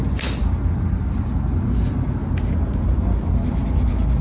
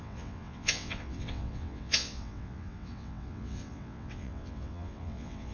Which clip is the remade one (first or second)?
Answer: second